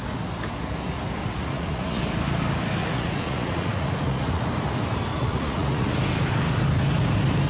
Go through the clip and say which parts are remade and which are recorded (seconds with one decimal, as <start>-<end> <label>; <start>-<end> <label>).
0.0-1.2 recorded; 1.2-2.0 remade; 2.0-2.8 recorded; 2.8-4.4 remade; 4.4-5.1 recorded; 5.1-5.9 remade; 5.9-7.5 recorded